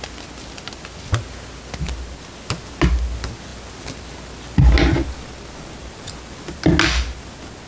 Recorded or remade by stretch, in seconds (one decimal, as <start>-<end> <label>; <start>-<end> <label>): 0.0-7.7 recorded